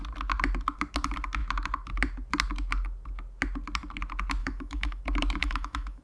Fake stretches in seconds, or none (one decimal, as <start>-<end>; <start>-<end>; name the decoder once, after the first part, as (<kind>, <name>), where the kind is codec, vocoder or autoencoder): 4.4-5.0 (autoencoder, DAC-VAE); 5.4-6.0